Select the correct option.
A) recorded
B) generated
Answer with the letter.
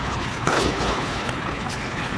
B